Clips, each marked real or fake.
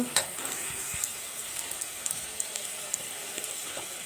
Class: fake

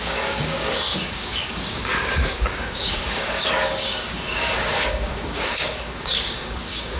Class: fake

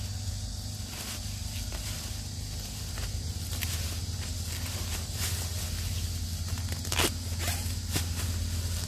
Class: real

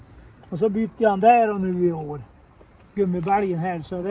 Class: real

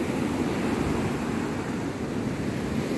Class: real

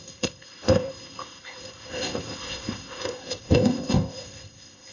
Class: fake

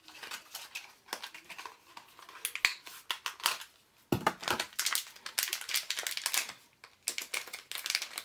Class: real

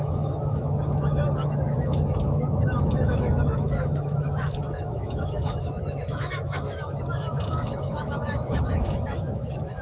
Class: fake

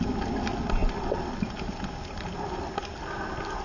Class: real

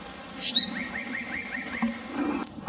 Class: real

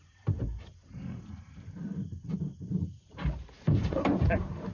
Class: fake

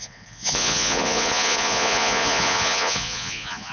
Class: fake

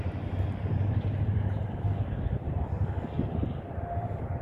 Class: fake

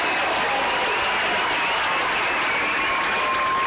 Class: real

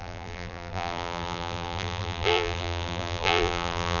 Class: fake